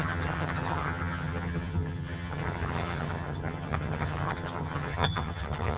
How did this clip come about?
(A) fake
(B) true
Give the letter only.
A